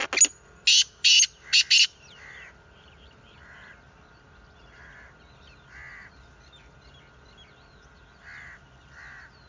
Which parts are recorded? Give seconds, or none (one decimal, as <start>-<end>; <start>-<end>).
0.0-9.5